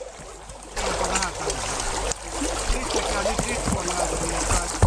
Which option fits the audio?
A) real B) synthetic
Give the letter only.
A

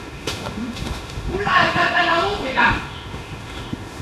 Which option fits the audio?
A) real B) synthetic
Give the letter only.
B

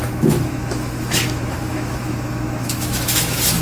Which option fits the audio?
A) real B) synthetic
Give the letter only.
B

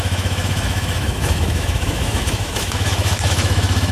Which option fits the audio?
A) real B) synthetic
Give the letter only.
B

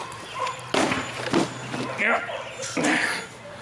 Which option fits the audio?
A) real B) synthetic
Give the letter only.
A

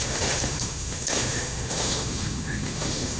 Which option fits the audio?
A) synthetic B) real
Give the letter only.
A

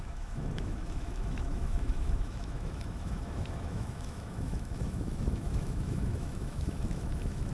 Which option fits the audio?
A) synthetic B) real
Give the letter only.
A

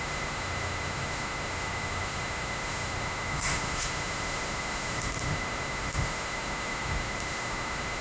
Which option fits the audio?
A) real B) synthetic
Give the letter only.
B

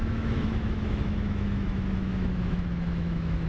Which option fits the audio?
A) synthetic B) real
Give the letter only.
A